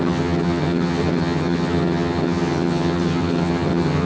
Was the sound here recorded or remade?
remade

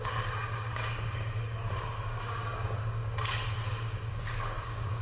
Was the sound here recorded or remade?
remade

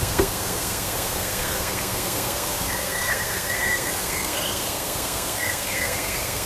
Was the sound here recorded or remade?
remade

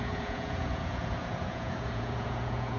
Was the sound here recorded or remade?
remade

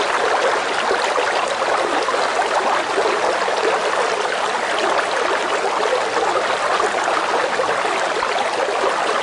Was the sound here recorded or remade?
recorded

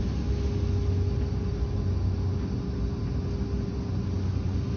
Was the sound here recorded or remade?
recorded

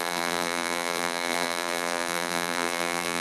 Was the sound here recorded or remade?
remade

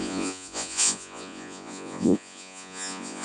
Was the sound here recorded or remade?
remade